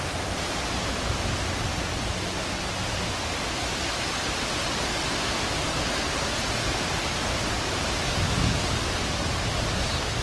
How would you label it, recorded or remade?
recorded